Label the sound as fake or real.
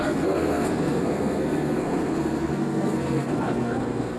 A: fake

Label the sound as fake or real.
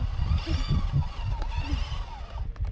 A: real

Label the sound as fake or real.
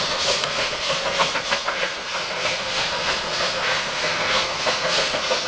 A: fake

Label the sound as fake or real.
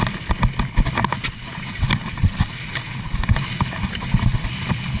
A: real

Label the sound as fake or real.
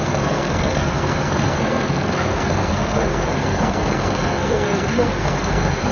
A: fake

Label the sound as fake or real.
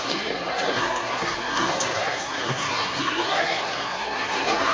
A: fake